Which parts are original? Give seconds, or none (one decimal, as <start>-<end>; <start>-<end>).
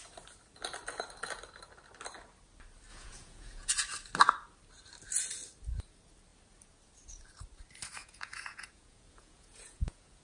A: 0.0-2.9; 3.7-8.0